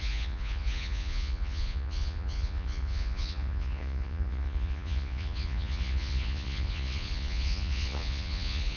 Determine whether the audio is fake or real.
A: fake